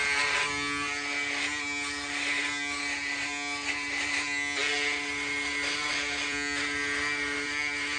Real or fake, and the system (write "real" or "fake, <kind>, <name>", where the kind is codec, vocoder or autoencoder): real